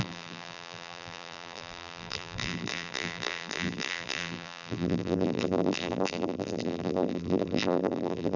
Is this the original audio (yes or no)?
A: no